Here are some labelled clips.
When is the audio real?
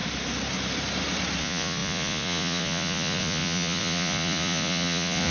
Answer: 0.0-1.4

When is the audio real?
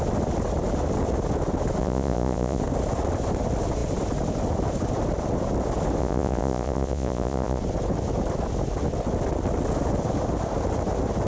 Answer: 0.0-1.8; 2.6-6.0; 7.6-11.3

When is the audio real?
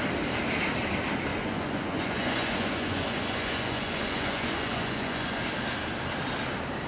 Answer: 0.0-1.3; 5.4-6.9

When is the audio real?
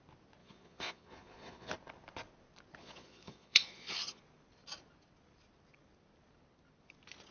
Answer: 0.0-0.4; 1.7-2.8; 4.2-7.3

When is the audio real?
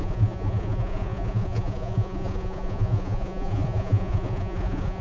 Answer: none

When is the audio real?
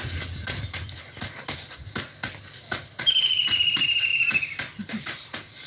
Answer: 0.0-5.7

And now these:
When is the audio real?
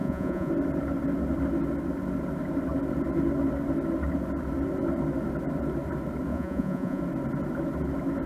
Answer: 0.5-6.3; 7.0-8.3